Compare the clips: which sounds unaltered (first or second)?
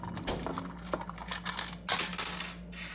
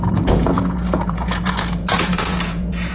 first